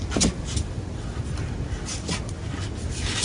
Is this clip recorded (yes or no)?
yes